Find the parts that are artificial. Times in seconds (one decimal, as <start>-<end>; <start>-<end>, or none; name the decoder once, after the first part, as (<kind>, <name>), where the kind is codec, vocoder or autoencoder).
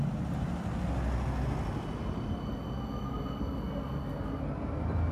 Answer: none